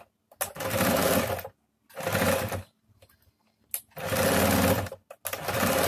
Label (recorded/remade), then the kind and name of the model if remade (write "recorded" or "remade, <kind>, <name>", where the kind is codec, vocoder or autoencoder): recorded